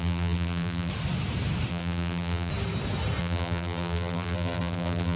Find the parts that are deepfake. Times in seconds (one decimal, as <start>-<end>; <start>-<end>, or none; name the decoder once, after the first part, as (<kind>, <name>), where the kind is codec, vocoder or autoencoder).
0.0-0.9 (vocoder, BigVGAN v2); 1.7-2.5; 3.2-5.2